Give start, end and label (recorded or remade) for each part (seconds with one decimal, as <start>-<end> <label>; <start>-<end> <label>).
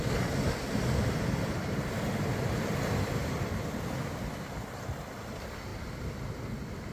0.0-3.2 recorded; 3.2-3.7 remade; 3.7-5.7 recorded; 5.7-6.2 remade; 6.2-6.9 recorded